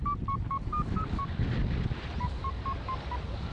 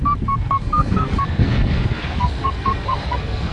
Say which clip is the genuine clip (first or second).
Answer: first